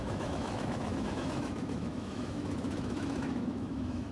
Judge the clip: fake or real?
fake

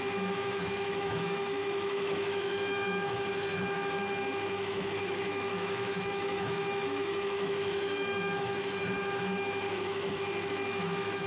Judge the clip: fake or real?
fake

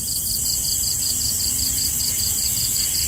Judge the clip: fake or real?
real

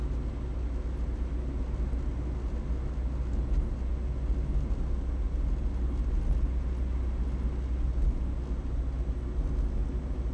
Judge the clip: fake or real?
real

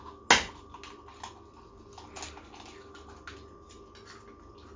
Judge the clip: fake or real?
real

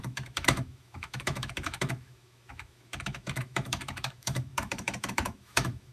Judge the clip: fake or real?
fake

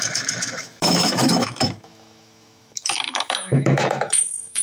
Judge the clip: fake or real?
fake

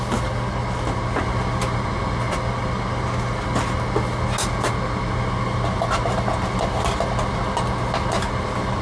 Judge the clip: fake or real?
real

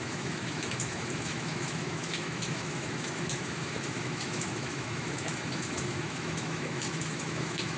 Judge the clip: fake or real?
fake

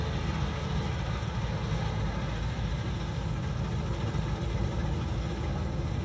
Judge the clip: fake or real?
real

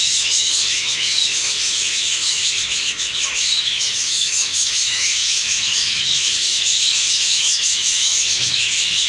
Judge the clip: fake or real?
fake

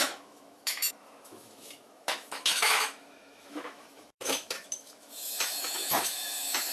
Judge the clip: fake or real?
fake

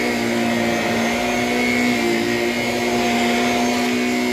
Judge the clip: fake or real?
real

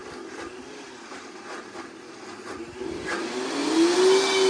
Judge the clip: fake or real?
real